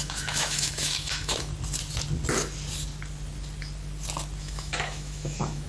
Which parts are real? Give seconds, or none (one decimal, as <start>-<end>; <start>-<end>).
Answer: 1.5-4.4